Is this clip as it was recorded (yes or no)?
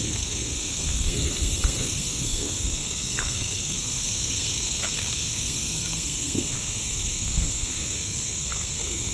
no